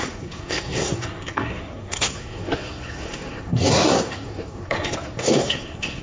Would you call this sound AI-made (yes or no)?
yes